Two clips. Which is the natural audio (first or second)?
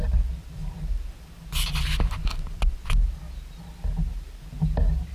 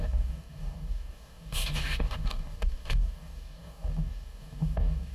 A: first